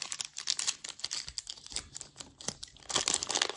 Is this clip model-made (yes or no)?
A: no